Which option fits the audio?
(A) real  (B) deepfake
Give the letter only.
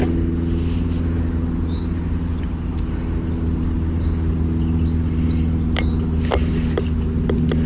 A